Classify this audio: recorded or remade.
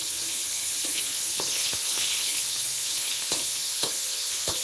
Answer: remade